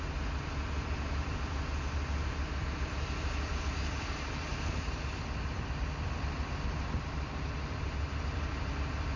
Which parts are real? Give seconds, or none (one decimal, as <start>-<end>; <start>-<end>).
0.0-9.2